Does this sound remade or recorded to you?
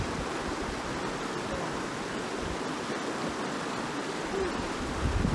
recorded